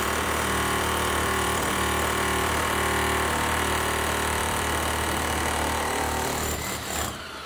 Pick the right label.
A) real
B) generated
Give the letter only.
B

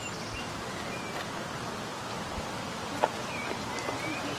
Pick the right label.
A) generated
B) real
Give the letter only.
B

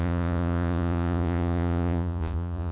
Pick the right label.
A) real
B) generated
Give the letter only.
B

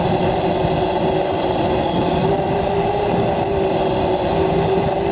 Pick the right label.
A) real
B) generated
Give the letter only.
B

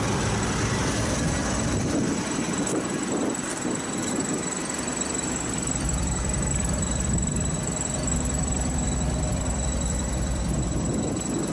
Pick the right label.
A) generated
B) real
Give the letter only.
B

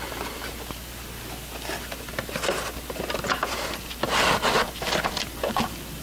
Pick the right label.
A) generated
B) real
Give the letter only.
B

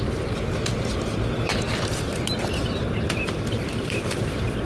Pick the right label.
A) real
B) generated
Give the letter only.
A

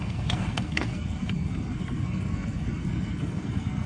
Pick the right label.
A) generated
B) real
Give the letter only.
A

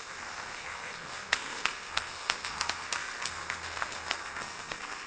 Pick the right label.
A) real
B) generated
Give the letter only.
B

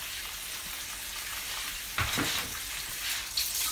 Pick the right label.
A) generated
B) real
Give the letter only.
B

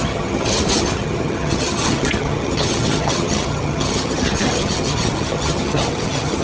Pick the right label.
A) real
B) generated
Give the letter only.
B